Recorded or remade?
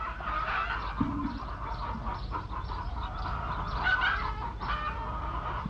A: recorded